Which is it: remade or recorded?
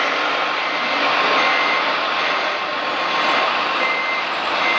recorded